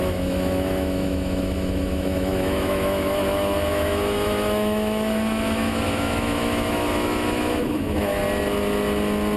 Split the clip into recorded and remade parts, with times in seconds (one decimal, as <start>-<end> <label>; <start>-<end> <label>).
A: 0.0-8.2 remade; 8.2-9.4 recorded